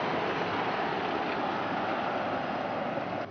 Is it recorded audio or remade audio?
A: recorded